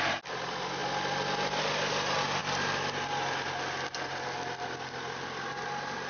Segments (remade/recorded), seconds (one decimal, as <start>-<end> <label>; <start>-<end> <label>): 0.0-6.1 recorded